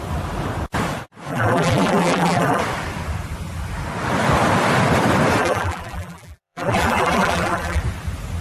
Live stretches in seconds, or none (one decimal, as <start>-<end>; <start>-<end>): 0.0-1.3; 2.6-5.4; 7.8-8.4